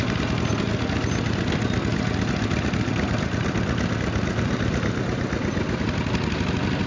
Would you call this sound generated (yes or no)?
no